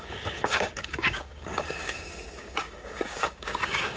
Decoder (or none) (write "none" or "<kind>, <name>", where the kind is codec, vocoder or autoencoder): codec, DAC